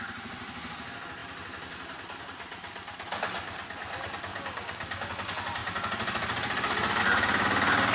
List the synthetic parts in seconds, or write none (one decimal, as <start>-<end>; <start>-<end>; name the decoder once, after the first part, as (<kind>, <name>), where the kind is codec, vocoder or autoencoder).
4.3-5.1 (codec, DAC)